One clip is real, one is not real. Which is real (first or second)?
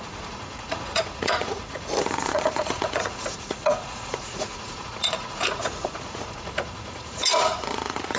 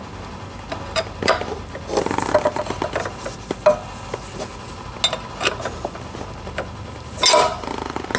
second